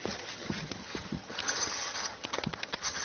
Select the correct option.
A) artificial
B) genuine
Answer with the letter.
A